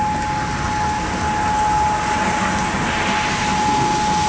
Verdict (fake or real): real